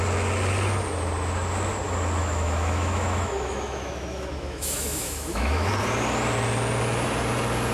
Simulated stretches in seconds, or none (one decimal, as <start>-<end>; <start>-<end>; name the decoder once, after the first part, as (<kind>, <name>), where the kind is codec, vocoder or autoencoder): 2.2-5.7 (autoencoder, DAC-VAE)